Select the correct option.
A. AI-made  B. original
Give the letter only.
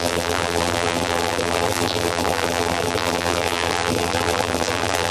A